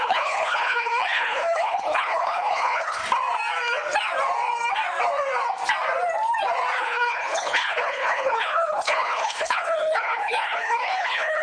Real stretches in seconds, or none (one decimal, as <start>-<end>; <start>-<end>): 3.0-6.8

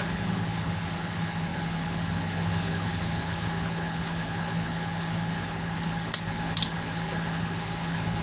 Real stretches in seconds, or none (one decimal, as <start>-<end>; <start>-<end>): none

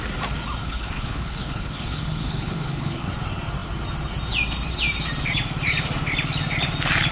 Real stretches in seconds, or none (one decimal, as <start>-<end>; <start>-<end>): 0.0-0.6; 3.1-7.1

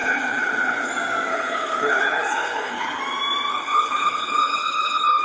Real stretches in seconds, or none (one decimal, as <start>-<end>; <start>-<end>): 0.9-1.3; 3.0-3.5

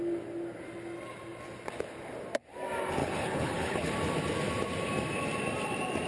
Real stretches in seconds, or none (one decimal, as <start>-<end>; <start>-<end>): 0.0-3.0; 3.9-6.1

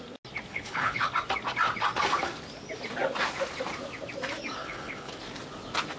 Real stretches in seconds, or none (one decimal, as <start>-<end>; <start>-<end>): 0.0-0.5; 1.1-4.6; 5.2-6.0